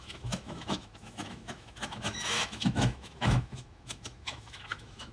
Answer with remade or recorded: remade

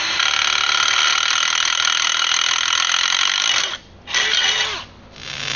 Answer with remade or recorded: recorded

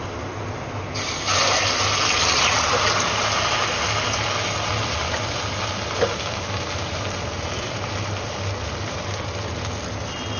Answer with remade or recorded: recorded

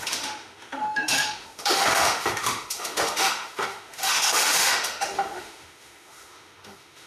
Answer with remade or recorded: remade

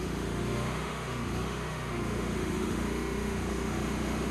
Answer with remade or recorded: remade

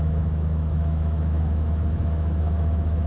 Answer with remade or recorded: remade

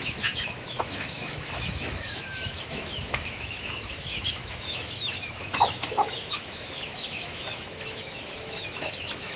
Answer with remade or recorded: remade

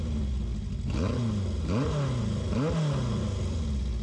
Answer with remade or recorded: recorded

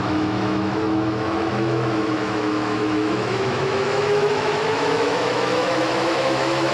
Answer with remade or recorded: remade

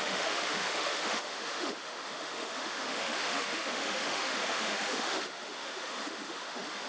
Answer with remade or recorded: remade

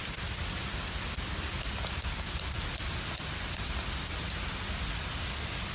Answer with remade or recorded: recorded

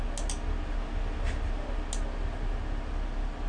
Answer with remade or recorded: recorded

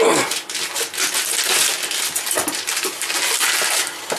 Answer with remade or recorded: recorded